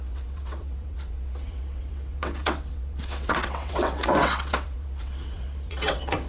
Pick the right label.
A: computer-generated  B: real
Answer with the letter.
A